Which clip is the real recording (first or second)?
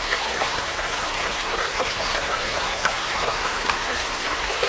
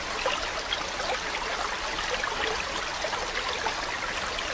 second